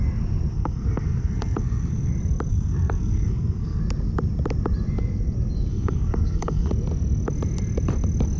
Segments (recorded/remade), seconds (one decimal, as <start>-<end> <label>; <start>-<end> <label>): 0.0-0.5 recorded; 0.5-2.1 remade; 2.1-2.5 recorded; 2.5-3.8 remade; 3.8-5.7 recorded; 5.7-6.7 remade; 6.7-8.4 recorded